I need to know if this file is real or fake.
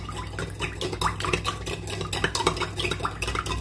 real